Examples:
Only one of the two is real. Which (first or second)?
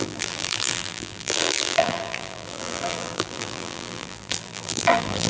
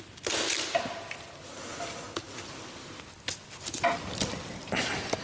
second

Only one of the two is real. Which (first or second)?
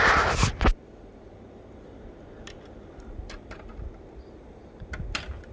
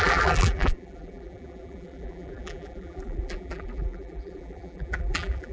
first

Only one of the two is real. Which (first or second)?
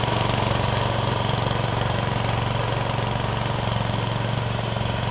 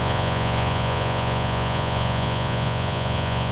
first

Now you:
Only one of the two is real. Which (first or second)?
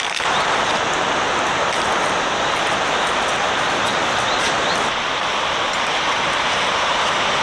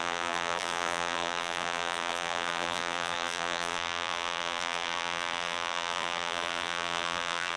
first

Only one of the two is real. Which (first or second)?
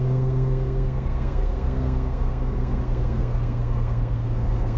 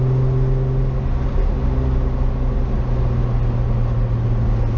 second